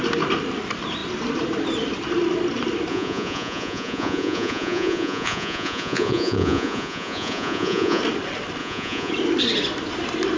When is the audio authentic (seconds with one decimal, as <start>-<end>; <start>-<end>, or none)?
0.0-2.9; 8.0-8.6; 9.1-10.4